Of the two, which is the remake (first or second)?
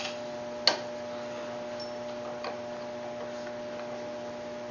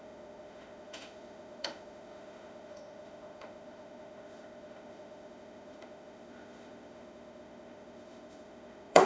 second